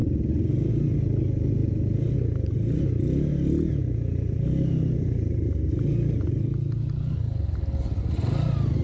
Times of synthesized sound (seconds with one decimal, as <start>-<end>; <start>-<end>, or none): none